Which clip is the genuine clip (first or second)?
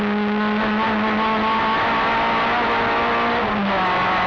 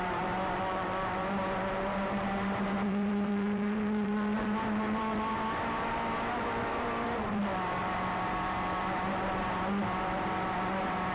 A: first